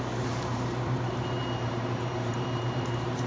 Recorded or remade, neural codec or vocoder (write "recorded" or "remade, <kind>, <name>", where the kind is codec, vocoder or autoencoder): remade, vocoder, BigVGAN v2